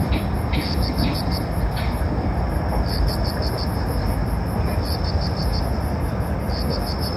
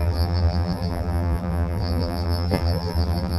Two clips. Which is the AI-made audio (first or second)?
second